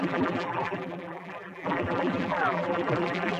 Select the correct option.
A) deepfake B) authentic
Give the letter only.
A